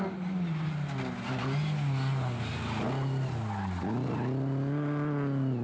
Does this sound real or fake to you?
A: real